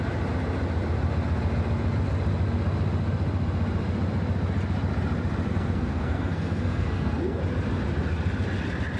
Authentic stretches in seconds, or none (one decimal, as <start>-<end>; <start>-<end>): 0.0-5.5; 7.4-9.0